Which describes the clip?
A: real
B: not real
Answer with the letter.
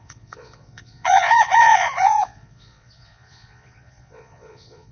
B